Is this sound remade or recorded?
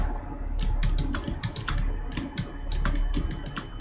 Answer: recorded